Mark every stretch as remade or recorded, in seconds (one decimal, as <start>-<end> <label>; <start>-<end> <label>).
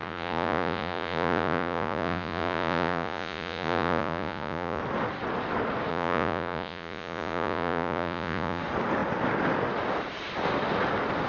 0.0-4.8 remade; 4.8-5.9 recorded; 5.9-8.6 remade; 8.6-11.3 recorded